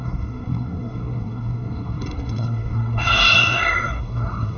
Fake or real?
fake